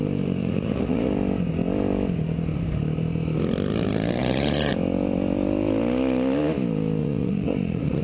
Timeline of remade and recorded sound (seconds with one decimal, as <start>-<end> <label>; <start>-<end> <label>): 0.0-0.4 recorded; 0.4-1.1 remade; 1.1-4.2 recorded; 4.2-4.7 remade; 4.7-7.0 recorded; 7.0-8.0 remade